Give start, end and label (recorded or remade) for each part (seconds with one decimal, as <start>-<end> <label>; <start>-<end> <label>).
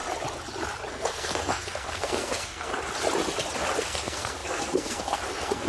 0.0-0.9 recorded; 0.9-2.7 remade; 2.7-3.8 recorded; 3.8-5.7 remade